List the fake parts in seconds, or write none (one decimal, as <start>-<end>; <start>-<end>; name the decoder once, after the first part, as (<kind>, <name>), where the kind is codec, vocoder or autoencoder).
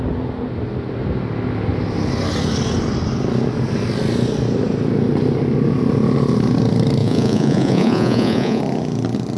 7.0-8.6 (vocoder, Vocos)